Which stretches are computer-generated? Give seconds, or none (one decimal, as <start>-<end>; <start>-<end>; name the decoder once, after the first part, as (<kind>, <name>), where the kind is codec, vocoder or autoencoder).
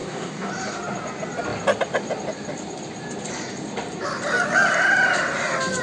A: 0.0-0.5 (codec, DAC)